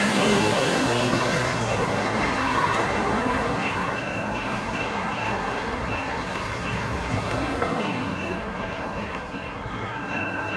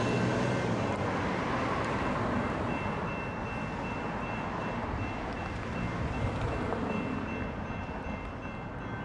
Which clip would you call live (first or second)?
second